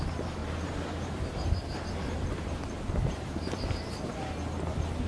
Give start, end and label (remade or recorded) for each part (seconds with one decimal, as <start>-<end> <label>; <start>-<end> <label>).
0.0-0.4 recorded; 0.4-1.9 remade; 1.9-2.6 recorded; 2.6-4.2 remade; 4.2-5.1 recorded